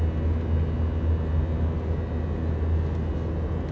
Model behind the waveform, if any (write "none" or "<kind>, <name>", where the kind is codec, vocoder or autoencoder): none